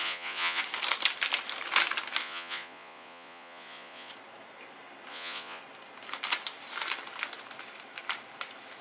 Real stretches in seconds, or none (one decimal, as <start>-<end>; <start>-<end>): 0.6-2.2; 4.1-5.1; 5.6-8.8